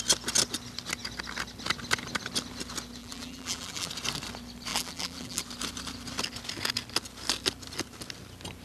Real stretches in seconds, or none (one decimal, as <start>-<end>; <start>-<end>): 0.0-3.0; 3.9-4.7; 5.4-8.6